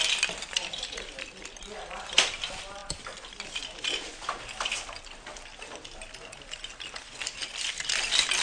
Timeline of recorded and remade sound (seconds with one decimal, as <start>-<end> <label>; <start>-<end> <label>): 0.0-8.4 recorded